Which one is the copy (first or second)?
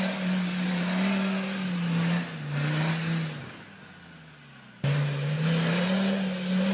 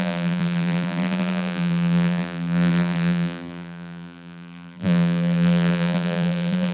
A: second